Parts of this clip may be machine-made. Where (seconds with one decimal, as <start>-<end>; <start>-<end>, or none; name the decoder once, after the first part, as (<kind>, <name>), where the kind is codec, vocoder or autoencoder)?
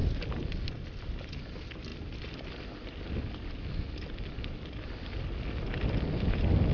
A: none